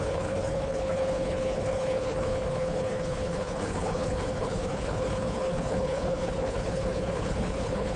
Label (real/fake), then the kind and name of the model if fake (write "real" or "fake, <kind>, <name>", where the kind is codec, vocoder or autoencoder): fake, codec, HILCodec